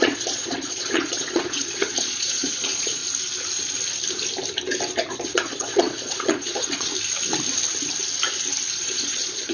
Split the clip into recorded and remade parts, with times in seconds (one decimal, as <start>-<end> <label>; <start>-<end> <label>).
0.0-3.0 remade; 3.0-5.1 recorded; 5.1-6.9 remade; 6.9-8.7 recorded; 8.7-9.5 remade